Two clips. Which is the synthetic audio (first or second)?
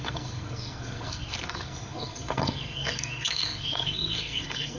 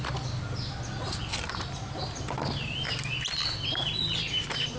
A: first